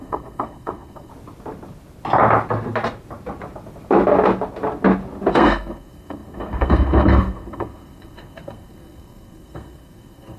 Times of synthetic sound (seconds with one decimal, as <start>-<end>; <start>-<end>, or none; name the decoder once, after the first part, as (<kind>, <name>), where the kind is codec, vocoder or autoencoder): 0.0-1.1 (codec, SNAC); 5.3-10.4